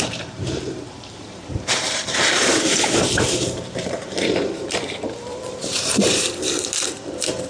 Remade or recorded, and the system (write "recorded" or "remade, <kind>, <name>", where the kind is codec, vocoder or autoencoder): remade, vocoder, BigVGAN v2